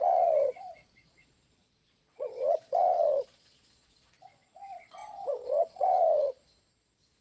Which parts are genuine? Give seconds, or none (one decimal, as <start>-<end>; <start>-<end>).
none